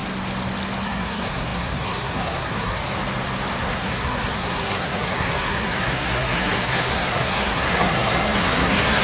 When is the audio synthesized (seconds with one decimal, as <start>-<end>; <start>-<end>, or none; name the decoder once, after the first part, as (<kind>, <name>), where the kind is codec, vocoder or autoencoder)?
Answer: 0.8-2.8 (codec, SNAC); 3.6-9.0